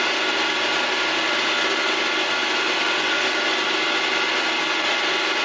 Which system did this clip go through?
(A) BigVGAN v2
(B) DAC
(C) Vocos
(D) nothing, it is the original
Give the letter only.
D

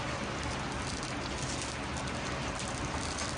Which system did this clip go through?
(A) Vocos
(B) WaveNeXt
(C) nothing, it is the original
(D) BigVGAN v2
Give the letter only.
C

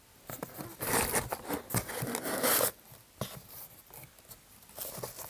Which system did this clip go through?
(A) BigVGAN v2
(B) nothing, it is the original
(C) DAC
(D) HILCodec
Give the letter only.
B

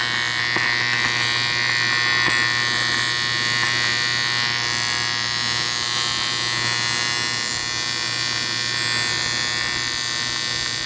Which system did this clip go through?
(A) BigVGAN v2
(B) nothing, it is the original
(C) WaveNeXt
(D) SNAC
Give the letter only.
B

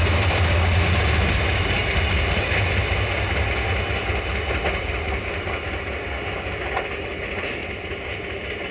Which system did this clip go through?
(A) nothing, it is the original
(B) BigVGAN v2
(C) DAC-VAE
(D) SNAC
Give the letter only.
A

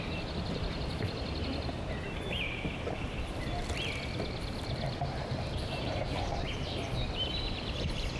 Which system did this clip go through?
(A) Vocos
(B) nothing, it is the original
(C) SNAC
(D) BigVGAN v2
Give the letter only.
D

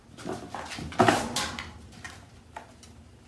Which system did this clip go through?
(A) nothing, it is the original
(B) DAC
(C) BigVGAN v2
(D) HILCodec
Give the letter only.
A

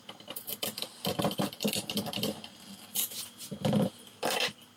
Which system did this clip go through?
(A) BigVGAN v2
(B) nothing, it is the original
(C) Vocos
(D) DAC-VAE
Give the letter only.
A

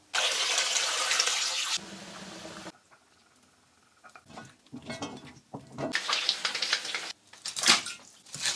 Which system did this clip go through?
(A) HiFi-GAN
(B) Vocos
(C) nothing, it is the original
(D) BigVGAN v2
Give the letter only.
C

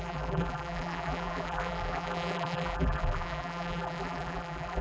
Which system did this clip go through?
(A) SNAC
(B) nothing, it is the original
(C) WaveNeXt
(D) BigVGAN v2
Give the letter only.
D